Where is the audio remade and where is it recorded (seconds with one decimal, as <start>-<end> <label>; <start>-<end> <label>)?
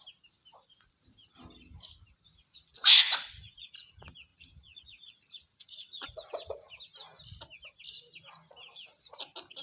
0.0-2.8 recorded; 2.8-3.9 remade; 3.9-4.3 recorded; 4.3-6.7 remade; 6.7-9.6 recorded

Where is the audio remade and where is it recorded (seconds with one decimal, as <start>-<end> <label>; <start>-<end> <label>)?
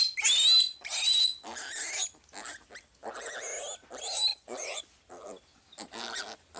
0.0-4.3 recorded; 4.3-4.8 remade; 4.8-6.6 recorded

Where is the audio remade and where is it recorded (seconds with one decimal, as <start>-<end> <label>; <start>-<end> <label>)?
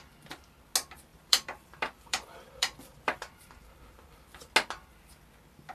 0.0-1.1 recorded; 1.1-4.5 remade; 4.5-5.7 recorded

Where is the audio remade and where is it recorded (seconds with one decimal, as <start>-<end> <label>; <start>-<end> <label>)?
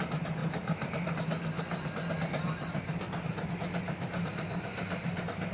0.0-5.5 recorded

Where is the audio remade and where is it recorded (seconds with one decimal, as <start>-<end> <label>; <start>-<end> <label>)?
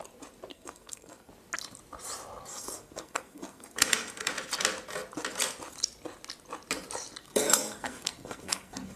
0.0-0.5 recorded; 0.5-1.3 remade; 1.3-2.5 recorded; 2.5-4.3 remade; 4.3-7.2 recorded; 7.2-9.0 remade